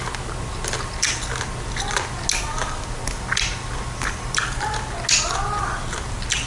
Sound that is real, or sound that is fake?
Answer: real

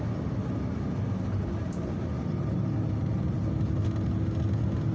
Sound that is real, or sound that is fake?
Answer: real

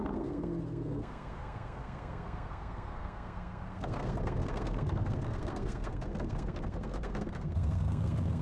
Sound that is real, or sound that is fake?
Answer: fake